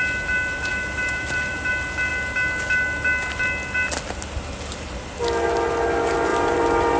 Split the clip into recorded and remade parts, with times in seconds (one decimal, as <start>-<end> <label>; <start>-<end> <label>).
0.0-0.7 recorded; 0.7-1.7 remade; 1.7-6.3 recorded; 6.3-7.0 remade